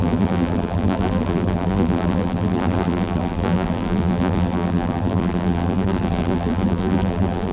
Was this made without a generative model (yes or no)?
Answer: no